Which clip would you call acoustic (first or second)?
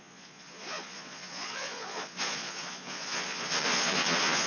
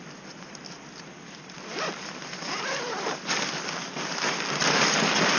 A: second